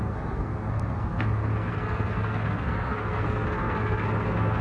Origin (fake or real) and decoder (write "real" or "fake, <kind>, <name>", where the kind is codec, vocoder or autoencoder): fake, codec, SNAC